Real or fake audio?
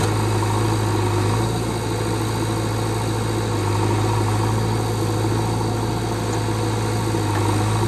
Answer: real